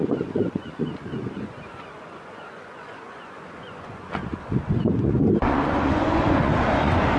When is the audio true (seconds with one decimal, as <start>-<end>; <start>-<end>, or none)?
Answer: none